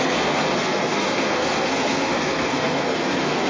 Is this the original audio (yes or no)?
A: no